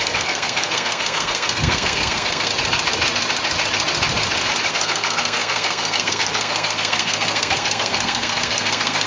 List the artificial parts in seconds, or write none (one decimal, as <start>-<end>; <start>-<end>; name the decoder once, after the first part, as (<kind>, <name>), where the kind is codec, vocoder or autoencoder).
0.0-2.5 (codec, SNAC); 4.7-9.1